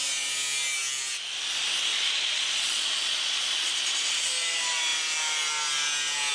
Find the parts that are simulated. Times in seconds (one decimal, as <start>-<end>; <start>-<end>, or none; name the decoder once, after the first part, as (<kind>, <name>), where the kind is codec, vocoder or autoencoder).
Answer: 1.9-3.7 (vocoder, Vocos)